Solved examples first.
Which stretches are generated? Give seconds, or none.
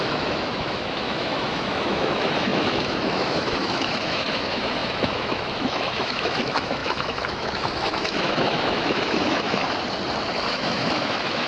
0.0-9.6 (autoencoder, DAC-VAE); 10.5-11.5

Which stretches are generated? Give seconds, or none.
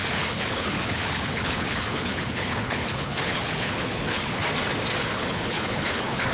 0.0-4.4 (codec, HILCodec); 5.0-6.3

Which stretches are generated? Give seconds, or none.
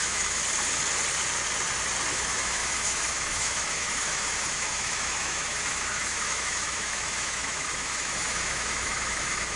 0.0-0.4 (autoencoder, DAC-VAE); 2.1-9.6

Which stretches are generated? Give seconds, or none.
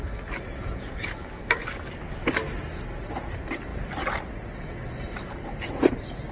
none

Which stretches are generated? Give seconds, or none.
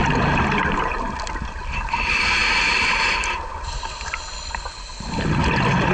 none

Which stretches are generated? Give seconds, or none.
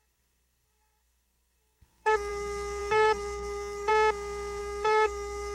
0.0-3.9 (codec, SNAC); 4.6-5.5